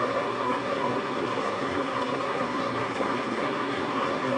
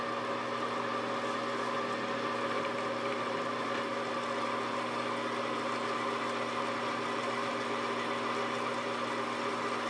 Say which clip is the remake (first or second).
first